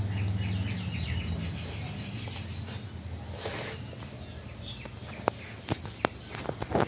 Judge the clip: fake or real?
real